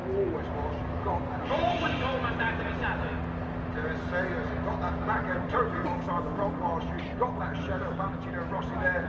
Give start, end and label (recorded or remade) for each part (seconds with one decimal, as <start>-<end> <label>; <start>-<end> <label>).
0.0-2.3 recorded; 2.3-3.1 remade; 3.1-5.2 recorded; 5.2-9.1 remade

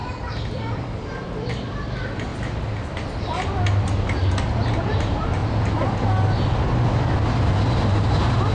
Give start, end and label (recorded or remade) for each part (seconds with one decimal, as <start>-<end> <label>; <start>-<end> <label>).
0.0-2.3 remade; 2.3-4.8 recorded; 4.8-5.4 remade; 5.4-8.5 recorded

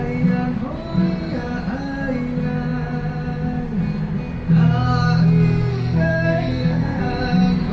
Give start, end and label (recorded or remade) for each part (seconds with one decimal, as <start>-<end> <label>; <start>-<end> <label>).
0.0-5.7 recorded; 5.7-7.0 remade; 7.0-7.7 recorded